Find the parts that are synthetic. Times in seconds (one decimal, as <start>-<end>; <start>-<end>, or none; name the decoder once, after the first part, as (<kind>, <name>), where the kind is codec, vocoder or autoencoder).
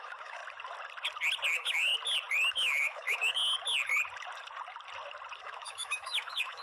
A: 0.0-0.4 (autoencoder, DAC-VAE); 1.5-1.9; 2.5-3.4; 5.4-6.6